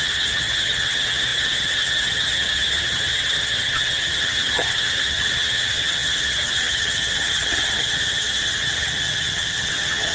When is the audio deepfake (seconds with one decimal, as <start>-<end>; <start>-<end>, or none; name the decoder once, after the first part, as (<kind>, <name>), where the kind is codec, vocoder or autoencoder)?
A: 0.0-10.1 (vocoder, HiFi-GAN)